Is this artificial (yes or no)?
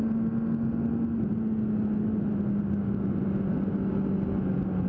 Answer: no